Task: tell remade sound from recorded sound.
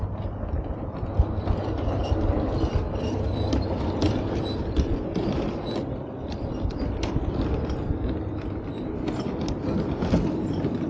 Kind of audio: recorded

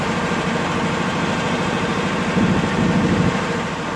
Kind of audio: remade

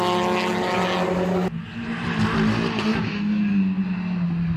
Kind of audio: recorded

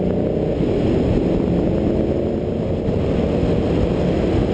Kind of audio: recorded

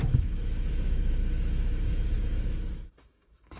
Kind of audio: remade